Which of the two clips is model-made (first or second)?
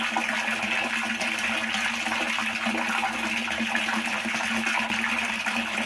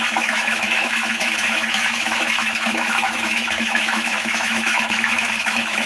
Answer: second